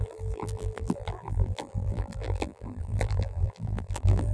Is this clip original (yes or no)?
no